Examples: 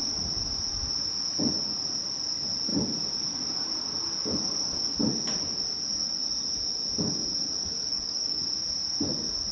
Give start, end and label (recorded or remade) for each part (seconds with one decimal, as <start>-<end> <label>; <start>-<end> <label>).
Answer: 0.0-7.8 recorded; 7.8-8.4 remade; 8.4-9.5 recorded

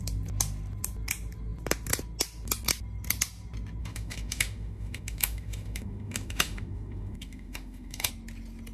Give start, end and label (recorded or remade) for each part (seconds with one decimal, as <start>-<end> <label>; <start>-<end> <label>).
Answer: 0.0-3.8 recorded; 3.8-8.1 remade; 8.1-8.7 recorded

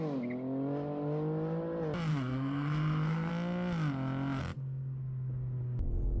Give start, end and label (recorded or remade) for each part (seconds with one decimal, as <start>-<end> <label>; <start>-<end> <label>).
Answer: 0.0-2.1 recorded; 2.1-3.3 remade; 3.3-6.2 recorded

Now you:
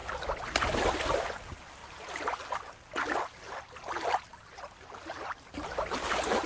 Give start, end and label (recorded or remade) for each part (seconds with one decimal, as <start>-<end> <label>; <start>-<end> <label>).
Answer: 0.0-6.5 recorded

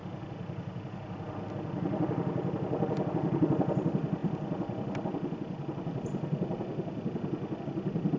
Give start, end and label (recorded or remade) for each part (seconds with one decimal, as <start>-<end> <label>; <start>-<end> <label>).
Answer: 0.0-8.2 recorded

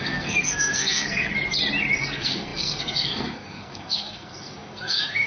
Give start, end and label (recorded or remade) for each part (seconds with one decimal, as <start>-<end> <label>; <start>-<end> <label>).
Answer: 0.0-1.3 remade; 1.3-2.0 recorded; 2.0-5.3 remade